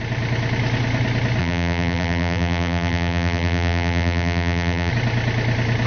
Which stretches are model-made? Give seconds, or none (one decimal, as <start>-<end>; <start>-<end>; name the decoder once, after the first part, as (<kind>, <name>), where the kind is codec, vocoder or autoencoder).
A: 1.4-4.9 (vocoder, BigVGAN v2)